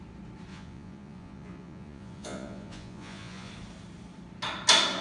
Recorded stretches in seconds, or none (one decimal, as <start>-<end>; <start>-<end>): 0.0-0.5; 3.5-5.0